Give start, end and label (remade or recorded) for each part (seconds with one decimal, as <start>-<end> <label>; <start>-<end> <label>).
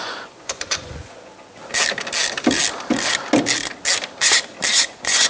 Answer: 0.0-1.6 remade; 1.6-4.8 recorded; 4.8-5.3 remade